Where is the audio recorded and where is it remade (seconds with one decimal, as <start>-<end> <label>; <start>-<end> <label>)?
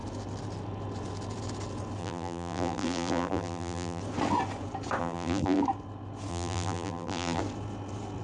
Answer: 0.0-2.0 recorded; 2.0-4.0 remade; 4.0-5.0 recorded; 5.0-5.6 remade; 5.6-6.3 recorded; 6.3-7.4 remade; 7.4-8.2 recorded